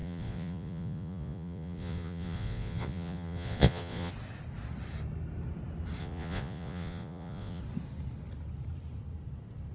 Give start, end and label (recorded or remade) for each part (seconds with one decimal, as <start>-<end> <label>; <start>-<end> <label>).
0.0-4.1 remade; 4.1-6.0 recorded; 6.0-7.6 remade; 7.6-9.7 recorded